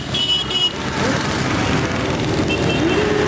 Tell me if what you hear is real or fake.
real